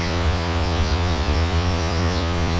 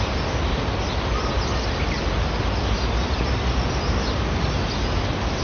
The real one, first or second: second